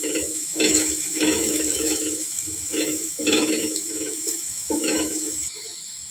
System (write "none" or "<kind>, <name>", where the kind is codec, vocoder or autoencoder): autoencoder, DAC-VAE